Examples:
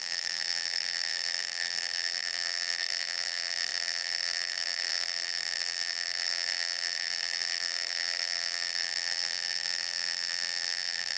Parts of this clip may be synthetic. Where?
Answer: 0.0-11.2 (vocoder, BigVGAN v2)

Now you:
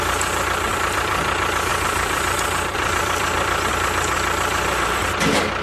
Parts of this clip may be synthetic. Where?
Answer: 0.7-1.2 (vocoder, BigVGAN v2); 1.7-5.1

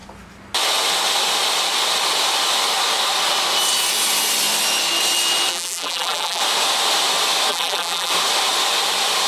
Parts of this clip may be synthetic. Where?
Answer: 5.5-6.4 (vocoder, BigVGAN v2); 7.5-8.1

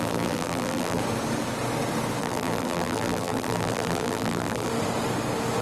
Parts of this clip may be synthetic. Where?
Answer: 0.0-1.0 (vocoder, BigVGAN v2); 2.2-4.7

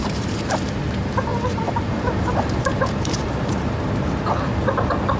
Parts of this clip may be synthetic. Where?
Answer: 0.0-0.8 (vocoder, BigVGAN v2); 1.3-3.8

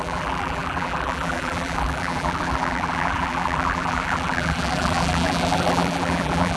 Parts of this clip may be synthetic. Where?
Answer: 0.0-6.6 (vocoder, BigVGAN v2)